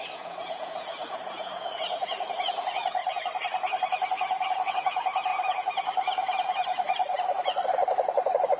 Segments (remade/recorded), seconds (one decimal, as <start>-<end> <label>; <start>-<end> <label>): 0.0-3.0 remade; 3.0-4.7 recorded; 4.7-5.3 remade; 5.3-8.6 recorded

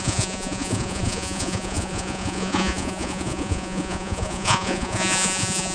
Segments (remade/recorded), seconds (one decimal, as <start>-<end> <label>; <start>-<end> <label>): 0.0-5.7 remade

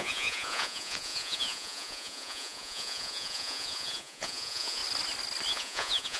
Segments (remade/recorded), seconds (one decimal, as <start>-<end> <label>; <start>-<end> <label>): 0.0-4.8 remade; 4.8-5.5 recorded; 5.5-6.2 remade

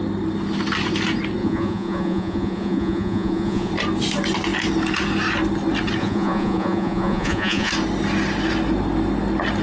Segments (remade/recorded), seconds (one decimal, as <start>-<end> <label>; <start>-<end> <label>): 0.0-1.4 recorded; 1.4-3.7 remade; 3.7-6.0 recorded; 6.0-7.7 remade; 7.7-9.6 recorded

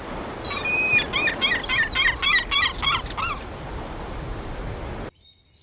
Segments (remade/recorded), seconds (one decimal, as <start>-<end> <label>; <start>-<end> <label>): 0.0-5.6 recorded